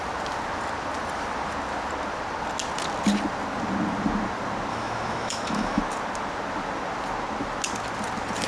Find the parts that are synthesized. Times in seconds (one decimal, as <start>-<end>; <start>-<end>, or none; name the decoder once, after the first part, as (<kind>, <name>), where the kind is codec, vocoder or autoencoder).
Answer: 4.7-5.8 (autoencoder, DAC-VAE)